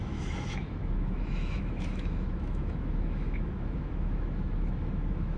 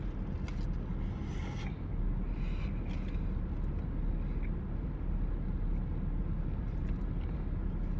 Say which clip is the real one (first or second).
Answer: second